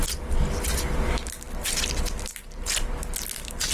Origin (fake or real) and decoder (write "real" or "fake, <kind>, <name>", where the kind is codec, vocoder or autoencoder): real